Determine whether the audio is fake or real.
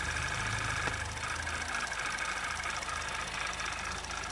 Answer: real